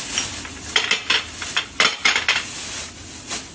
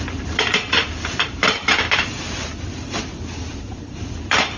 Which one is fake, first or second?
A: second